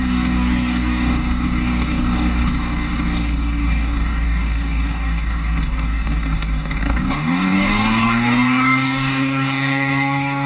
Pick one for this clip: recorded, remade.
remade